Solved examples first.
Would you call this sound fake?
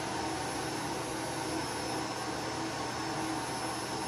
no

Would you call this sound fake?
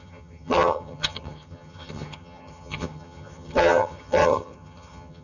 yes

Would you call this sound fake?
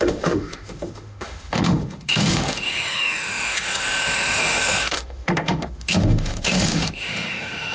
yes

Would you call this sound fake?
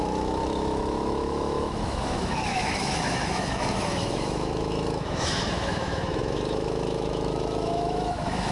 yes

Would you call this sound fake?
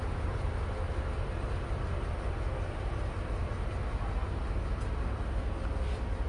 no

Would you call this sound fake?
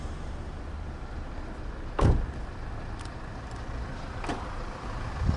yes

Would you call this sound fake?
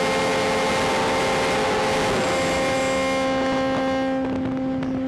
no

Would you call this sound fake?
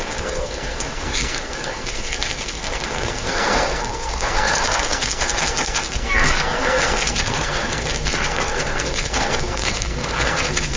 yes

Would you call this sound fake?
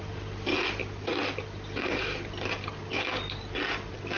no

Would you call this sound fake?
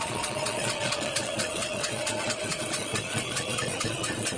yes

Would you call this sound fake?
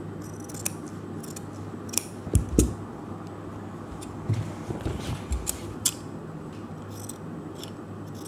no